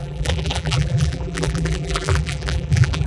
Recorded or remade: remade